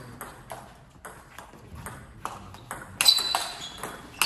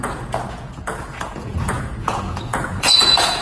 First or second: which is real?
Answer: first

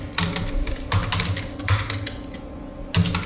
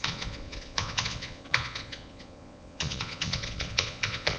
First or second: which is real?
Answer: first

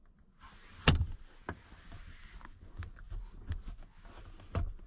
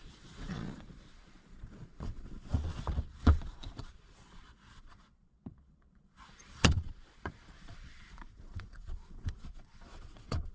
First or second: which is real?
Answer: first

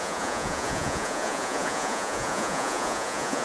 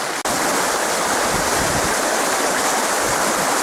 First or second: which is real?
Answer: second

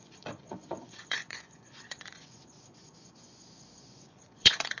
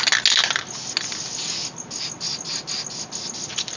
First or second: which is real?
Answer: second